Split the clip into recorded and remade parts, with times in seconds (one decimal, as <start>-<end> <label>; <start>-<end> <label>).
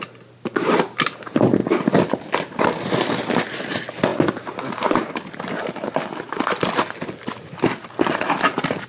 0.0-8.9 recorded